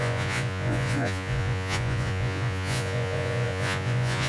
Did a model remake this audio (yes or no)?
yes